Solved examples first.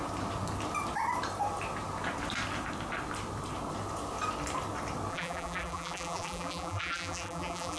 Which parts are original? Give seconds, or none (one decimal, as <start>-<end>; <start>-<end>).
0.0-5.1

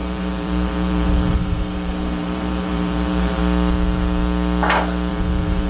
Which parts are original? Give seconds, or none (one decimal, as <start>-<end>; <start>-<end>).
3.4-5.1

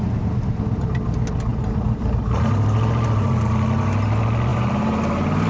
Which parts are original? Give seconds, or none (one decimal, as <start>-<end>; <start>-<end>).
0.0-1.5; 2.2-4.5

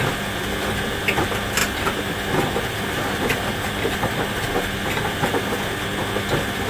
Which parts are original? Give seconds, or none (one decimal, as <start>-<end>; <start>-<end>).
0.0-1.6; 5.6-6.7